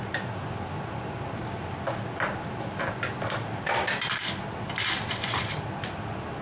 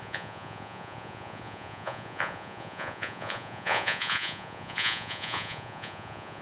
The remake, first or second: second